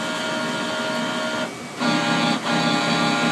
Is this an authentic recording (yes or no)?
yes